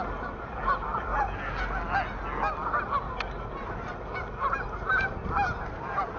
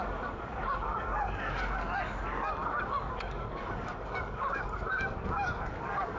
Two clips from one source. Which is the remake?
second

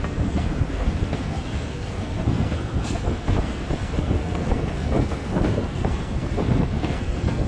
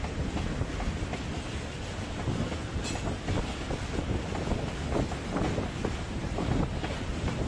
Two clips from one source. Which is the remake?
first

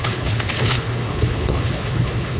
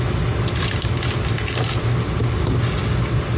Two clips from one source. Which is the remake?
first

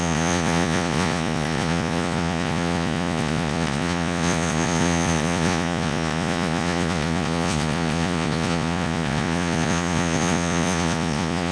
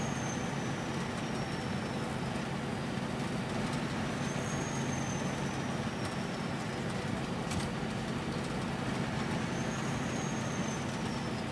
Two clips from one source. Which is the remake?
first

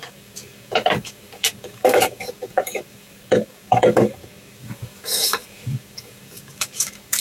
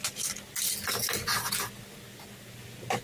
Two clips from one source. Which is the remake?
first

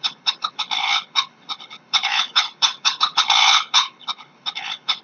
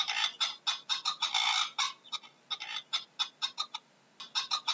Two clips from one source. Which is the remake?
first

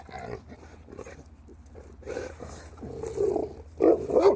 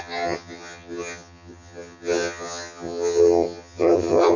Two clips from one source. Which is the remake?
second